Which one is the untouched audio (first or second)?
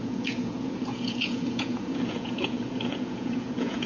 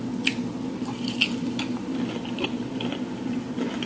second